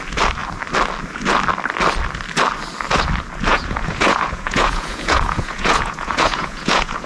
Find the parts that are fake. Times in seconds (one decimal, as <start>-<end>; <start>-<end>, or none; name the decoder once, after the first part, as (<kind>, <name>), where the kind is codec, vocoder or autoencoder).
3.5-7.1 (vocoder, Vocos)